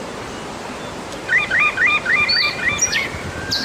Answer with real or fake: real